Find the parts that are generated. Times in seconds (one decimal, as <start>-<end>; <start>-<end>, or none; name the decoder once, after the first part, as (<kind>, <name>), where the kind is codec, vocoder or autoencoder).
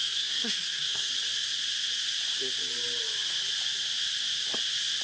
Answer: 0.0-1.1 (codec, SNAC)